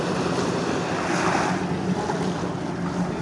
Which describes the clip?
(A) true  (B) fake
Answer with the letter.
A